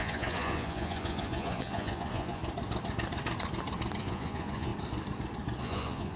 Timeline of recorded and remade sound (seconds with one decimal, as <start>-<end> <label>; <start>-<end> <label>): 0.0-2.4 remade; 2.4-4.0 recorded; 4.0-4.7 remade; 4.7-5.6 recorded; 5.6-6.2 remade